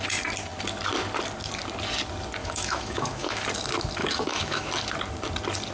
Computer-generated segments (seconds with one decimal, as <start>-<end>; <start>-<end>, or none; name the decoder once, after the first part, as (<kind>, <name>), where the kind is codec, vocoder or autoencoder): 2.4-3.4 (autoencoder, DAC-VAE); 4.0-4.7